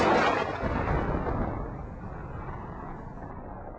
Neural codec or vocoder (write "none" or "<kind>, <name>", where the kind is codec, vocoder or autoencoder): none